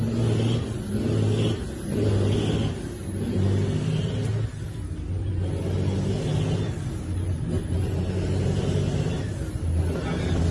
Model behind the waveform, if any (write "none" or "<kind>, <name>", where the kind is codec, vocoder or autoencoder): none